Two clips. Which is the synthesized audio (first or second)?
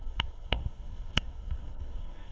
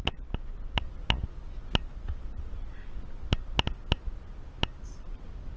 first